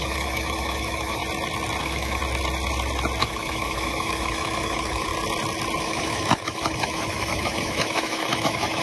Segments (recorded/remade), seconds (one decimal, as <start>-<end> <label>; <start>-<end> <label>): 0.0-1.2 remade; 1.2-1.8 recorded; 1.8-2.2 remade; 2.2-3.2 recorded; 3.2-5.1 remade; 5.1-5.8 recorded; 5.8-8.8 remade